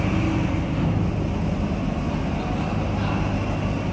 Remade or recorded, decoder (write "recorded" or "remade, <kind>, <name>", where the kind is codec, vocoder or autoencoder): recorded